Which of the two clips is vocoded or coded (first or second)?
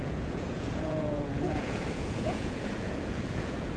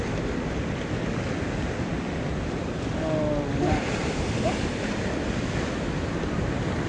first